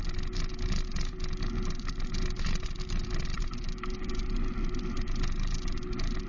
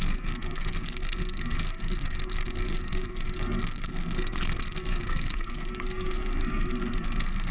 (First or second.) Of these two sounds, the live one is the first